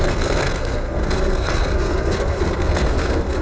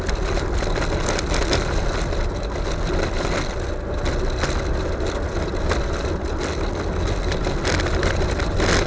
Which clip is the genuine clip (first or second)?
second